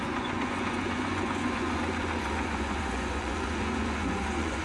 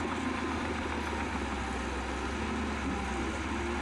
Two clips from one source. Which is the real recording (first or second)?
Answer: second